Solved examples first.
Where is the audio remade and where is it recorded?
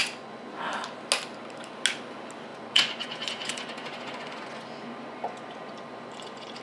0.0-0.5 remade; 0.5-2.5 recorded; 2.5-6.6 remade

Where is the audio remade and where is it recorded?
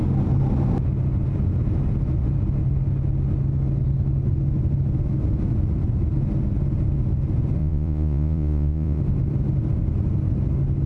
0.0-7.6 recorded; 7.6-9.0 remade; 9.0-10.9 recorded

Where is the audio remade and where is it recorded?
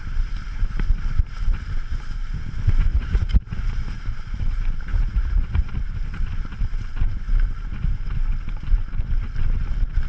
0.0-2.9 recorded; 2.9-4.0 remade; 4.0-4.9 recorded; 4.9-5.6 remade; 5.6-10.1 recorded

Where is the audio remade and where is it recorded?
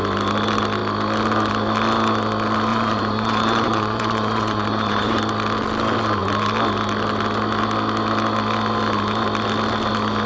0.0-2.7 recorded; 2.7-5.2 remade; 5.2-10.3 recorded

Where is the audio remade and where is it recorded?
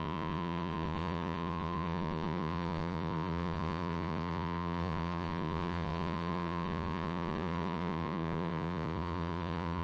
0.0-9.8 remade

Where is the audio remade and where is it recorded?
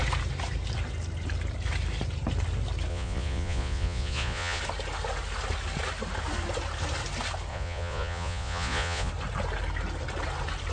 0.0-2.9 recorded; 2.9-4.6 remade; 4.6-7.5 recorded; 7.5-9.1 remade; 9.1-10.7 recorded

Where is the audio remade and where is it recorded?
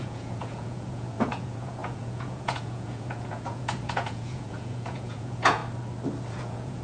0.0-5.6 remade; 5.6-6.3 recorded; 6.3-6.8 remade